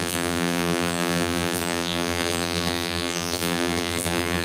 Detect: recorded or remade remade